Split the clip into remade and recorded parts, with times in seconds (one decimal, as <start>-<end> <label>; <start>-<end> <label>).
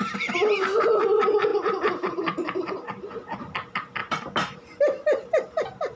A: 0.0-1.5 recorded; 1.5-3.0 remade; 3.0-4.0 recorded; 4.0-6.0 remade